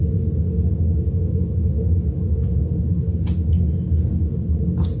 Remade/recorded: recorded